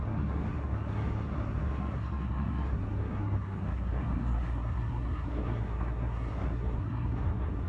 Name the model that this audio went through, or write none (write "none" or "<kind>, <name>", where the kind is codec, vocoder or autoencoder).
codec, SNAC